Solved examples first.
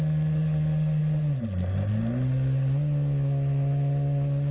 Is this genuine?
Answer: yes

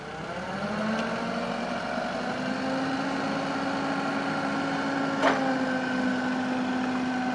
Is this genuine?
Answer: yes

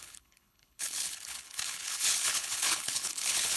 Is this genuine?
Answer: no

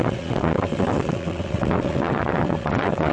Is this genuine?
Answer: no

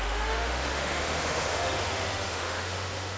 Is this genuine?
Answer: no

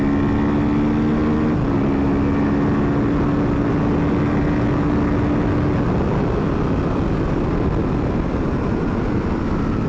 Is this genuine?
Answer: yes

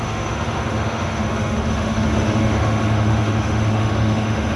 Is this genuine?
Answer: no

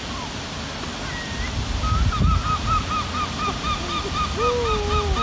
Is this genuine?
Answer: yes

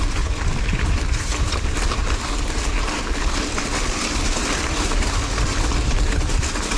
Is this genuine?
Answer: yes